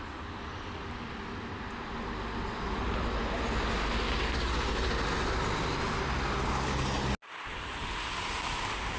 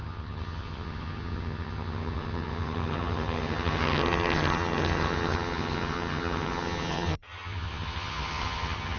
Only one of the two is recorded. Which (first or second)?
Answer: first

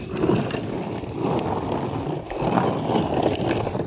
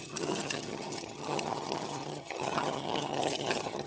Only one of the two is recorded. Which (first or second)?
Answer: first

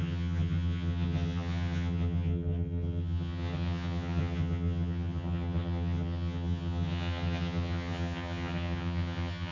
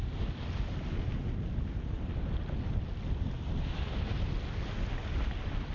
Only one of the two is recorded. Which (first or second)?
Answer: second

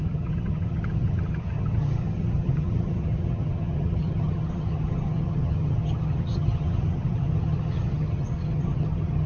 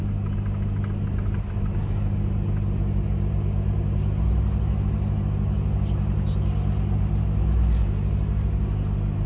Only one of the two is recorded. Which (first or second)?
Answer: second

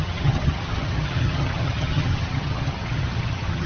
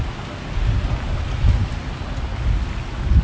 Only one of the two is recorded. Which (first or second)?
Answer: second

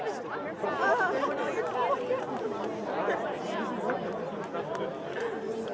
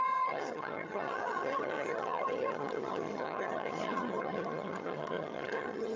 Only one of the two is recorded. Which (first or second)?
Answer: first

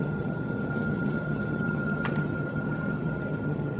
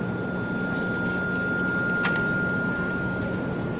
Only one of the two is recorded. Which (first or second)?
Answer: second